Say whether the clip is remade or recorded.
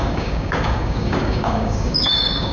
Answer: remade